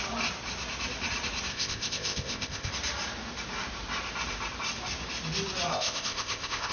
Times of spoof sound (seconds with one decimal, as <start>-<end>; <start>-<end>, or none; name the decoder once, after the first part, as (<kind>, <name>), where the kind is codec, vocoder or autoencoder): 1.5-2.7 (codec, ZipCodec); 5.7-6.7